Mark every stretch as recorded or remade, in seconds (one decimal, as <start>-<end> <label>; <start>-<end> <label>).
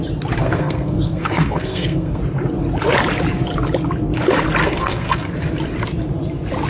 0.0-0.4 recorded; 0.4-2.2 remade; 2.2-4.6 recorded; 4.6-5.3 remade; 5.3-6.7 recorded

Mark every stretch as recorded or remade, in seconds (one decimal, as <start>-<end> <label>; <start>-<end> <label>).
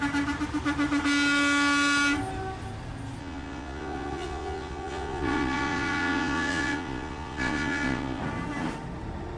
0.0-3.2 recorded; 3.2-8.2 remade; 8.2-9.4 recorded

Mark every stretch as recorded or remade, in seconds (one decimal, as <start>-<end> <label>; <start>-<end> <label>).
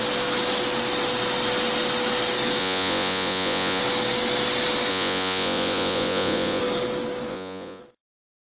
0.0-2.6 recorded; 2.6-3.8 remade; 3.8-4.9 recorded; 4.9-6.6 remade; 6.6-7.3 recorded; 7.3-7.8 remade; 7.8-8.6 recorded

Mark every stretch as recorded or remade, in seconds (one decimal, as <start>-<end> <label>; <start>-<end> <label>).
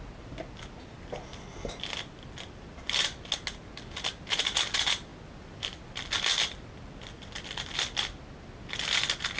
0.0-9.4 recorded